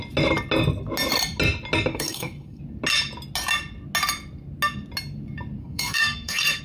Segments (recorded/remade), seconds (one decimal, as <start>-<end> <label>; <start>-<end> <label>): 0.0-1.9 recorded; 1.9-2.6 remade; 2.6-5.6 recorded; 5.6-6.6 remade